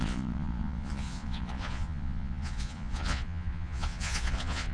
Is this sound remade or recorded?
remade